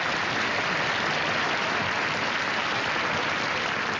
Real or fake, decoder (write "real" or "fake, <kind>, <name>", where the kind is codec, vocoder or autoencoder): real